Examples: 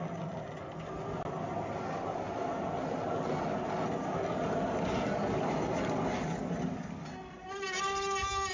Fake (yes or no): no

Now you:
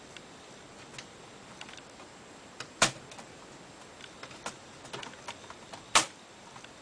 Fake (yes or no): no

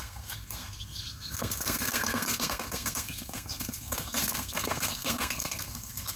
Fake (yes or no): yes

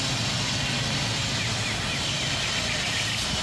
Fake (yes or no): no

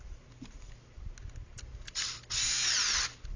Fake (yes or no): no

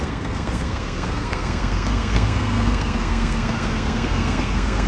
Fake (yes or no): yes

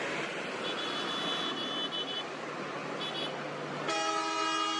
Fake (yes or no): no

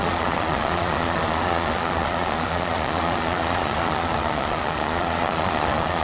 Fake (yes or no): yes